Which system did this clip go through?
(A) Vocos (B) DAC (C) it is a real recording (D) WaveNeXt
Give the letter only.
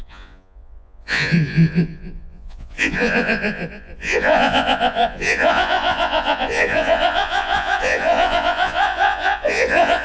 A